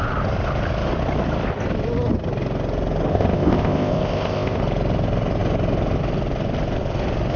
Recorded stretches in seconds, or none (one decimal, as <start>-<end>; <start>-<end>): 0.0-3.1; 4.6-7.4